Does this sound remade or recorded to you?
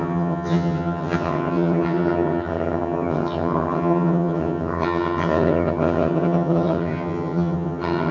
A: remade